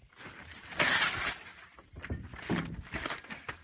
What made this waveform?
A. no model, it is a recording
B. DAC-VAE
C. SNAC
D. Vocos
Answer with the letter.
A